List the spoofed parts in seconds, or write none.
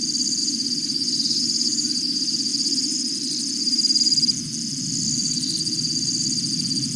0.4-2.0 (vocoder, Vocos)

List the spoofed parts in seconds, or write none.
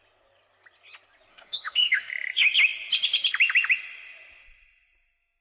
1.3-2.1 (autoencoder, DAC-VAE)